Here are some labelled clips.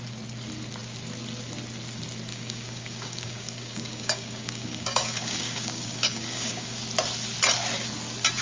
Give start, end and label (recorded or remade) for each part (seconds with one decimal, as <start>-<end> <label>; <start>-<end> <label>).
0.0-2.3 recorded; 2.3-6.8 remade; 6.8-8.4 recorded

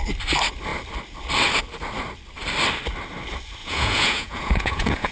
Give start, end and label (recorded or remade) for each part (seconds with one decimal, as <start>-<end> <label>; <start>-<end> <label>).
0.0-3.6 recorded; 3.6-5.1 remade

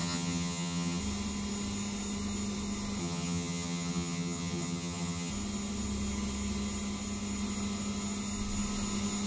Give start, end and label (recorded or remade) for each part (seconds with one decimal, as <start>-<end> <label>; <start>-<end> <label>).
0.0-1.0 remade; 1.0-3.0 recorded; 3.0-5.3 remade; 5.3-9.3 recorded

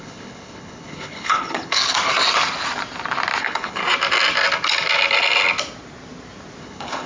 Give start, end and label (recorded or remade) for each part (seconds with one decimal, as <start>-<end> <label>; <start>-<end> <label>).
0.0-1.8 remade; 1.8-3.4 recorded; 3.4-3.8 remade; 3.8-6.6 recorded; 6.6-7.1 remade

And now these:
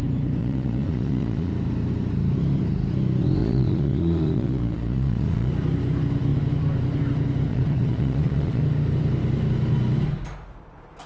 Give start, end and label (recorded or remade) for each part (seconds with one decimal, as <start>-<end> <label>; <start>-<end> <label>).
0.0-0.4 recorded; 0.4-1.5 remade; 1.5-3.4 recorded; 3.4-5.5 remade; 5.5-7.5 recorded; 7.5-8.6 remade; 8.6-11.1 recorded

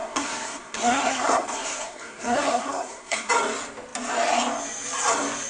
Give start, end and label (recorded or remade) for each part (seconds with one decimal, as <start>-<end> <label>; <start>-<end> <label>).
0.0-3.3 remade; 3.3-5.5 recorded

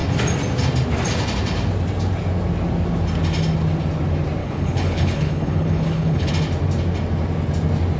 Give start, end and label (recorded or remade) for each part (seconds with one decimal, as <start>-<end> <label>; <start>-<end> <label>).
0.0-4.4 recorded; 4.4-6.3 remade; 6.3-8.0 recorded